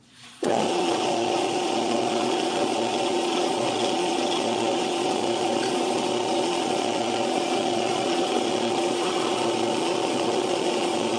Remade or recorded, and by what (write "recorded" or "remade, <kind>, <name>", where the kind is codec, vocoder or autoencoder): remade, vocoder, Vocos